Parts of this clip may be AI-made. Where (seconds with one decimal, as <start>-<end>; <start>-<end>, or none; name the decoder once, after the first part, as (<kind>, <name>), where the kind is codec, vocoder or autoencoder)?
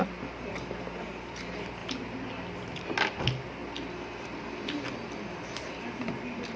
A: none